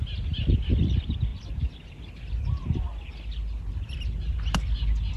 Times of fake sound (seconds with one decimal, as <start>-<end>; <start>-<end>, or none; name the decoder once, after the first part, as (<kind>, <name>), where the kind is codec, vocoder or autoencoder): none